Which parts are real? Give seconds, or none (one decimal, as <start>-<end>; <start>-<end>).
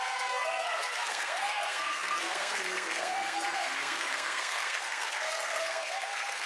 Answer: none